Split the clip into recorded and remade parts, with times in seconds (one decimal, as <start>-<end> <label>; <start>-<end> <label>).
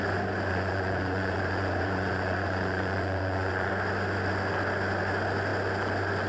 0.0-0.5 recorded; 0.5-3.7 remade; 3.7-6.3 recorded